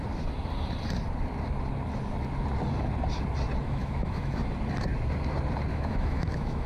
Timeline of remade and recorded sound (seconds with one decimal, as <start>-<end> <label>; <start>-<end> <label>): 0.0-3.6 recorded; 3.6-4.5 remade; 4.5-5.7 recorded; 5.7-6.7 remade

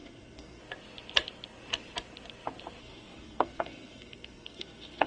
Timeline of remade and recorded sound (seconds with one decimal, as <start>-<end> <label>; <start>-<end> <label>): 0.0-0.6 remade; 0.6-2.8 recorded; 2.8-5.1 remade

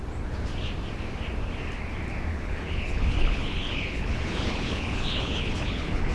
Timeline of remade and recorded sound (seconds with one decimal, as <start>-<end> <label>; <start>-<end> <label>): 0.0-2.3 recorded; 2.3-6.1 remade

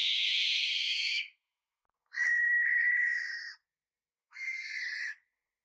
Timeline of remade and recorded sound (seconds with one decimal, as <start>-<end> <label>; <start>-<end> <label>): 0.0-3.4 remade; 3.4-4.1 recorded; 4.1-4.8 remade; 4.8-5.6 recorded

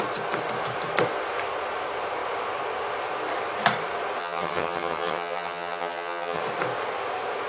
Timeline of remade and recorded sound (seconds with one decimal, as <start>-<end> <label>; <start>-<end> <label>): 0.0-4.2 recorded; 4.2-6.4 remade; 6.4-7.5 recorded

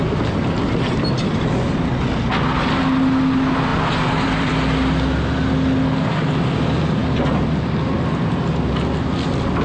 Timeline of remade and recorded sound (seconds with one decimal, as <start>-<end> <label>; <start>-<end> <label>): 0.0-3.7 recorded; 3.7-4.5 remade; 4.5-9.6 recorded

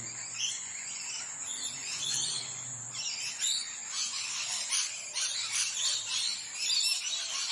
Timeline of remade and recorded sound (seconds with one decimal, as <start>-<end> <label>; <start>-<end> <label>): 0.0-4.5 remade; 4.5-7.5 recorded

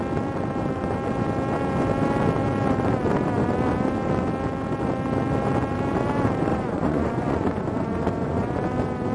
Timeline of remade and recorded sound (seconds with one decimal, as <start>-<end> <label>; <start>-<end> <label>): 0.0-6.5 recorded; 6.5-8.5 remade; 8.5-9.1 recorded